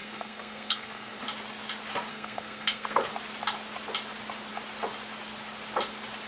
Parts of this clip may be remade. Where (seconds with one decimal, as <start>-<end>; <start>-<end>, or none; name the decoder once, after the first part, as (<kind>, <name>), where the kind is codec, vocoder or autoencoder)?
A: 0.0-1.2 (codec, SNAC); 2.1-3.0